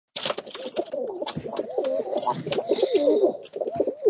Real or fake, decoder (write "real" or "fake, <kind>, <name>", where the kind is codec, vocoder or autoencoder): real